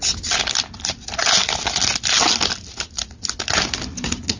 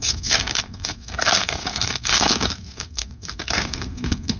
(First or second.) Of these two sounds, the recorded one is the first